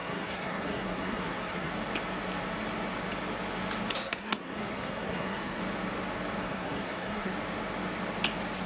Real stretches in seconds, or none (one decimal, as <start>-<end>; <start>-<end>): 1.7-4.0; 5.6-6.4; 7.3-8.7